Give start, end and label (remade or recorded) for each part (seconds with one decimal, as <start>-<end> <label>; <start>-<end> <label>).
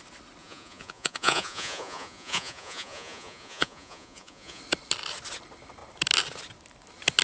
0.0-0.4 recorded; 0.4-4.6 remade; 4.6-7.2 recorded